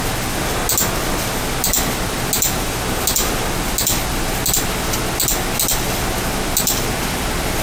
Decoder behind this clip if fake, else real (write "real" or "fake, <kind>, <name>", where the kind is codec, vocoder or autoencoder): real